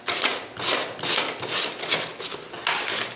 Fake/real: real